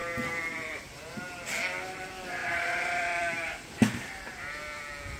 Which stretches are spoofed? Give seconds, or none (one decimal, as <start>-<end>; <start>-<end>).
0.0-0.8; 2.4-4.8